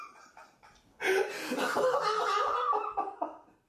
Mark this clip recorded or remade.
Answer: remade